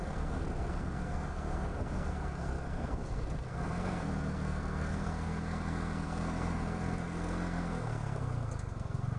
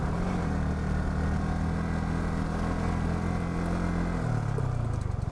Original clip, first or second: second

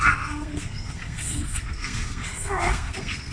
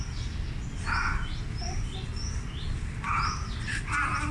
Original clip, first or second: second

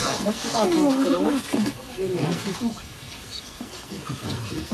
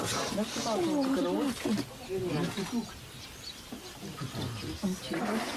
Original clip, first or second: second